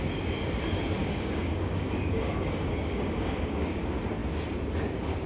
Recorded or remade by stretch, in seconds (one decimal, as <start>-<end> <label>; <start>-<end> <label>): 0.0-1.0 recorded; 1.0-3.8 remade; 3.8-5.3 recorded